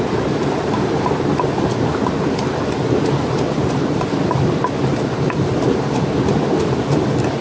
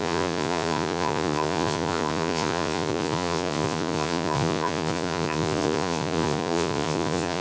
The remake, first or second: second